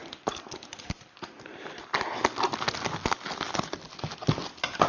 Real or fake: real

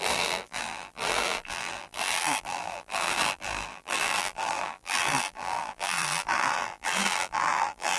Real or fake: fake